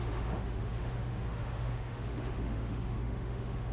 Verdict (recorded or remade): remade